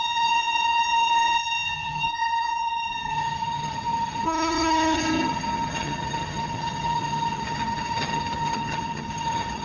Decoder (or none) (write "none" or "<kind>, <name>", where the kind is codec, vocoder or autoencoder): vocoder, HiFi-GAN